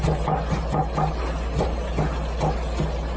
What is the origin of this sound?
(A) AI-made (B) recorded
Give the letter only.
B